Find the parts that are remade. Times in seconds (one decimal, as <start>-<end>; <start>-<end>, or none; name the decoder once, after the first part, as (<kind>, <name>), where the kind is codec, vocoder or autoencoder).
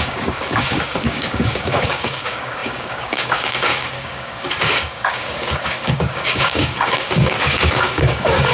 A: 0.0-8.5 (codec, DAC)